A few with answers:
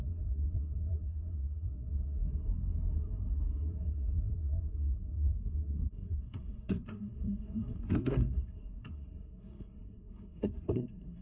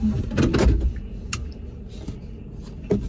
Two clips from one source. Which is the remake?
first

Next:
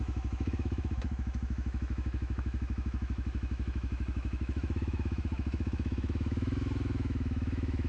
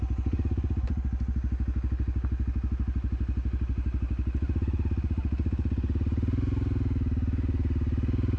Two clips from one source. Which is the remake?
first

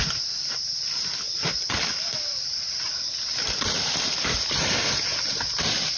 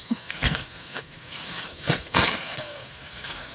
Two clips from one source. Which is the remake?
second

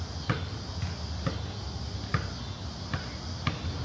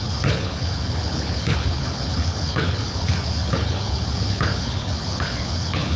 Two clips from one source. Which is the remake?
second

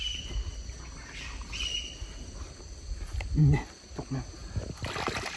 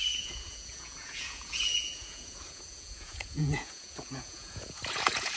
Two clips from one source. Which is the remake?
second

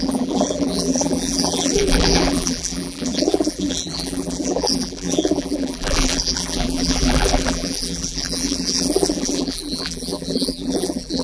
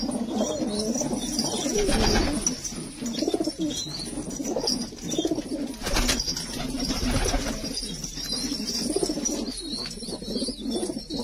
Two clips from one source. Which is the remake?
first